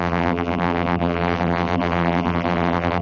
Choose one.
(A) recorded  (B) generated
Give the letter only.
B